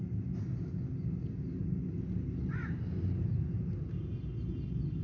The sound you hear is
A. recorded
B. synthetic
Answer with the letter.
A